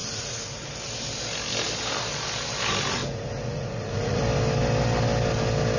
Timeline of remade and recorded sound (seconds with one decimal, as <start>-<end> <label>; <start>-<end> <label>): 0.0-0.7 remade; 0.7-3.0 recorded; 3.0-4.2 remade; 4.2-5.8 recorded